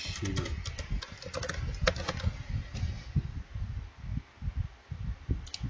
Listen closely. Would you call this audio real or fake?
real